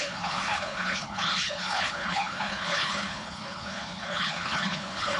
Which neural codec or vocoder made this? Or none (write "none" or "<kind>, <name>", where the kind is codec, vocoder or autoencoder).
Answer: codec, HILCodec